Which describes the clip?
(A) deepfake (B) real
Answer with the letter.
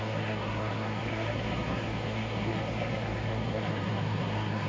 A